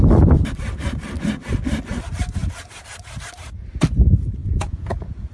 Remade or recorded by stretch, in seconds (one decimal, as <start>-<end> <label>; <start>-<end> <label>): 0.0-4.4 recorded; 4.4-5.3 remade